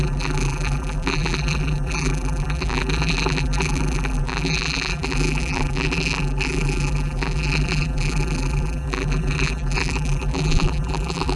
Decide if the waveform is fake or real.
fake